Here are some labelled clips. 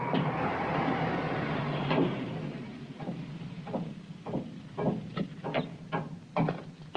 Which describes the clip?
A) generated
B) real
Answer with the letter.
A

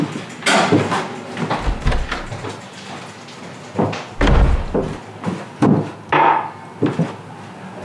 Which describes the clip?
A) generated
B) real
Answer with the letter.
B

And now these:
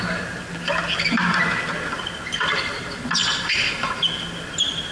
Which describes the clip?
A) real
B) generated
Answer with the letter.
A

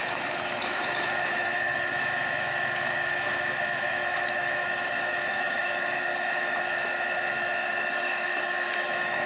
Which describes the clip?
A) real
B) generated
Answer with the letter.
B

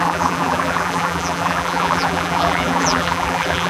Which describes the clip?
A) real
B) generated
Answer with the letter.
B